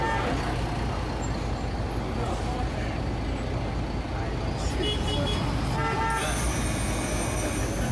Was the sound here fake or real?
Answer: real